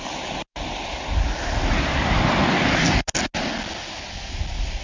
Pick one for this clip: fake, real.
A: real